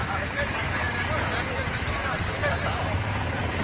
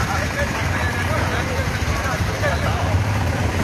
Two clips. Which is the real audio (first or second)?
first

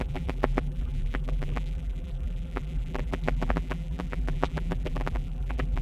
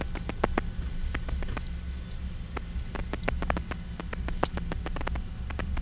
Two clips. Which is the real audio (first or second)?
second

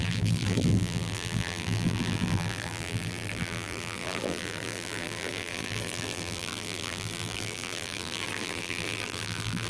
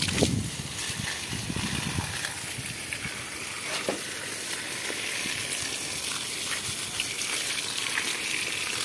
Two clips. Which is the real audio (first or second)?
second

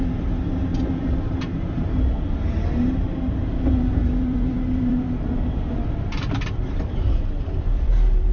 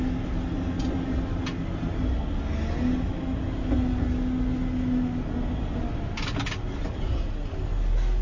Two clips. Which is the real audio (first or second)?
second